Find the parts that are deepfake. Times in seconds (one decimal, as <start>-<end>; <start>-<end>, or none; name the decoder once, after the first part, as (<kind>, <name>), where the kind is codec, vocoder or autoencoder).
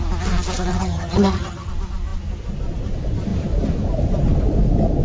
0.7-1.7 (vocoder, HiFi-GAN)